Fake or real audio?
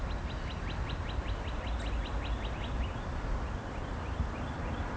real